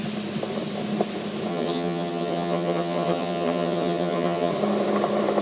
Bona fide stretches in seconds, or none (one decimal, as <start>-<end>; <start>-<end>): 0.0-1.5; 4.5-5.4